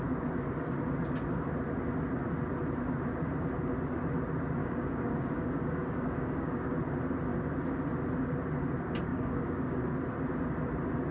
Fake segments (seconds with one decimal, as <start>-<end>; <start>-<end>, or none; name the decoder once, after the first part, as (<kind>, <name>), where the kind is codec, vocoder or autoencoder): 4.6-6.8 (codec, DAC); 9.1-9.8